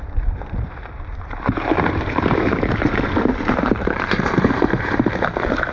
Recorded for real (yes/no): no